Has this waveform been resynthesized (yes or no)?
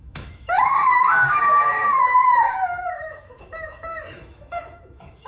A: yes